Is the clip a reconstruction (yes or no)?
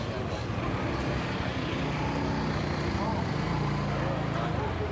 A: no